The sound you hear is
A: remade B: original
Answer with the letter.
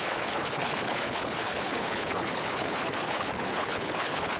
A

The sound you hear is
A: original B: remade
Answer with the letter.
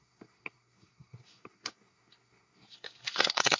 B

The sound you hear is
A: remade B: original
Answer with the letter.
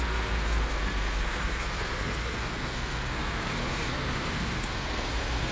A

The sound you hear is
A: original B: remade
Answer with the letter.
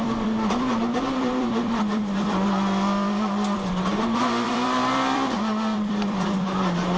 B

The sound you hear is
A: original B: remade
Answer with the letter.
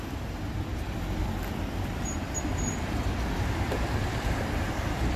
B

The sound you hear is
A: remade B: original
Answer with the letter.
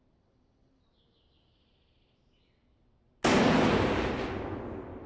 B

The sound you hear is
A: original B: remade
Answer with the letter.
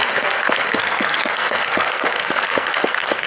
B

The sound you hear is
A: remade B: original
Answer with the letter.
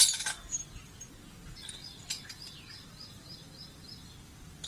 A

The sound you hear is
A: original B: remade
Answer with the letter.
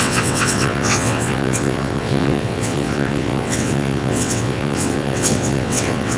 B